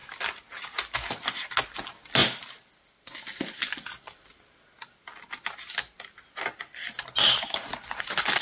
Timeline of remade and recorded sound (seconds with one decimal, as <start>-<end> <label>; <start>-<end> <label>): 0.0-8.4 recorded